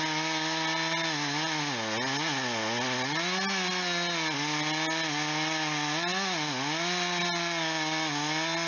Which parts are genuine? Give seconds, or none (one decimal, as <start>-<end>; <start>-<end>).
0.0-8.7